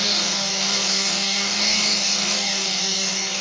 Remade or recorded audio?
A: remade